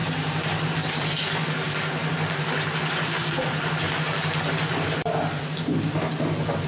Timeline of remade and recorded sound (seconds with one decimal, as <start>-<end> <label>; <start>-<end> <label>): 0.0-2.0 recorded; 2.0-5.6 remade; 5.6-6.7 recorded